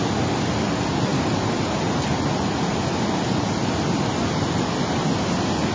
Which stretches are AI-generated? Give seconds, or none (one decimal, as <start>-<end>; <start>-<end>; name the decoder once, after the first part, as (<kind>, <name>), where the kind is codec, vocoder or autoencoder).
none